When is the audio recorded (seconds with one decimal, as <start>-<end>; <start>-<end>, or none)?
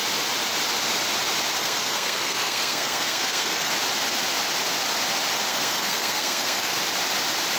0.0-1.6; 3.7-5.5; 6.8-7.6